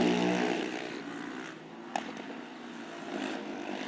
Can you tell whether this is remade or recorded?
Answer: recorded